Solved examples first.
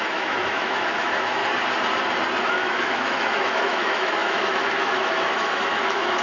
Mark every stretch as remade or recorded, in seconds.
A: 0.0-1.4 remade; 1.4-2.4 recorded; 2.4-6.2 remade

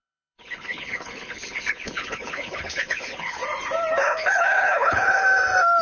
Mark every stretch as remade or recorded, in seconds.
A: 0.0-3.4 remade; 3.4-4.0 recorded; 4.0-5.2 remade; 5.2-5.8 recorded

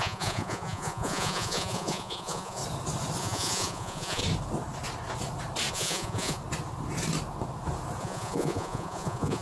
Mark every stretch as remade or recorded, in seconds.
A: 0.0-2.6 remade; 2.6-3.2 recorded; 3.2-4.2 remade; 4.2-5.7 recorded; 5.7-6.4 remade; 6.4-8.0 recorded; 8.0-9.4 remade

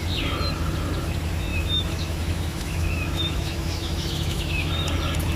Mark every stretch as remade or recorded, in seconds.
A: 0.0-1.5 recorded; 1.5-4.7 remade; 4.7-5.4 recorded